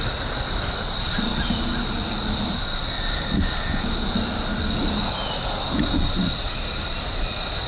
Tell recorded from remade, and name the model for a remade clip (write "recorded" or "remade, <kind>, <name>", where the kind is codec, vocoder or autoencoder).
recorded